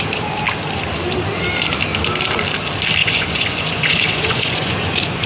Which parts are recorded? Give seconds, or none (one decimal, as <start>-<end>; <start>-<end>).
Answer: 0.0-3.0